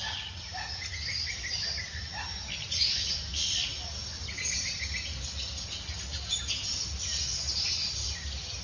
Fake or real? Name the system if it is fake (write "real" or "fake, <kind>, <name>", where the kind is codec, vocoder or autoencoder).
real